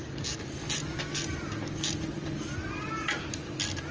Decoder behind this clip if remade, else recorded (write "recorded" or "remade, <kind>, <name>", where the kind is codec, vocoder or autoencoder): recorded